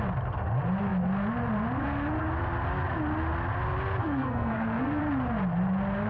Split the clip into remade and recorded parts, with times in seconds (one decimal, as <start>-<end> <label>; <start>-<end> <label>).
0.0-4.0 recorded; 4.0-5.0 remade; 5.0-6.1 recorded